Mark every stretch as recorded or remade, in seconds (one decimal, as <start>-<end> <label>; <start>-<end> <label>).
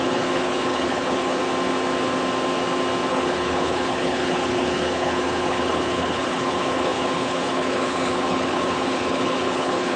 0.0-1.4 remade; 1.4-3.1 recorded; 3.1-10.0 remade